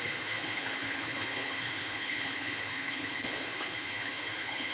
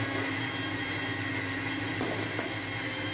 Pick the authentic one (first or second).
second